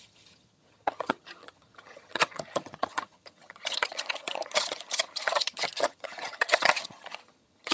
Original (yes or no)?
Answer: no